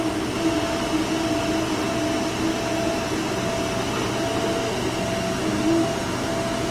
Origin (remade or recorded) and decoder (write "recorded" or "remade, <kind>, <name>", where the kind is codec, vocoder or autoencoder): recorded